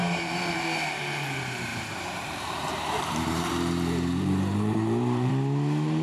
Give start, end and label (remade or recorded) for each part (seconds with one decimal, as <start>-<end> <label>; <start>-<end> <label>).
0.0-1.0 remade; 1.0-1.7 recorded; 1.7-5.3 remade; 5.3-6.0 recorded